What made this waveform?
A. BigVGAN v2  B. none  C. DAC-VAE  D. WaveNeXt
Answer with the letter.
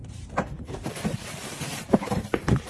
A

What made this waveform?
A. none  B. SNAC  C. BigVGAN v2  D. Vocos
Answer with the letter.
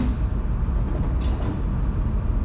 A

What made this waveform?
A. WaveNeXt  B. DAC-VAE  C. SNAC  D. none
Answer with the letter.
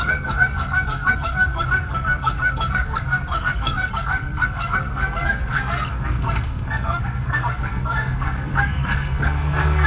C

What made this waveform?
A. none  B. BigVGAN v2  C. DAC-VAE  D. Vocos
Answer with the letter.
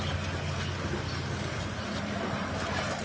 A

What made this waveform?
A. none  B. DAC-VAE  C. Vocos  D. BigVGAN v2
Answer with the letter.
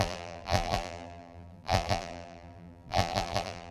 D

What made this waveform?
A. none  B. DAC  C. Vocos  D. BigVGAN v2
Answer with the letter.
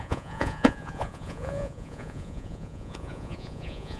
C